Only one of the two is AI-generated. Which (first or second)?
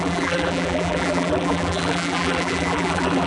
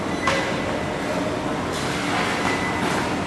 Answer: first